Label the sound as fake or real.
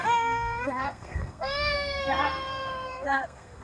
fake